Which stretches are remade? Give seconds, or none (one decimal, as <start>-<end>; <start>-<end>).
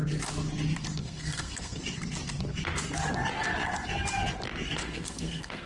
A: 1.0-1.8; 4.8-5.7